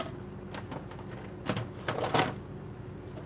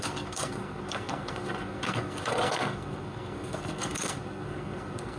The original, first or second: first